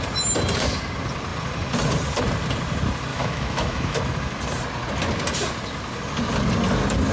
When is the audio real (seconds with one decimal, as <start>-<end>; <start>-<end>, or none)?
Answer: 0.0-3.1; 4.0-7.1